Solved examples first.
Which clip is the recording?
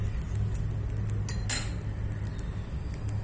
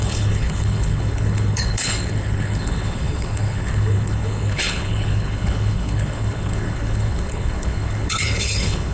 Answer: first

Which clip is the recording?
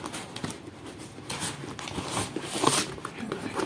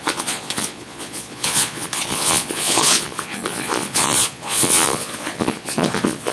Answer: first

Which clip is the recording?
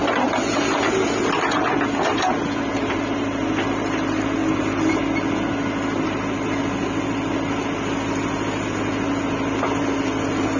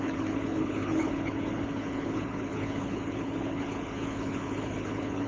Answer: first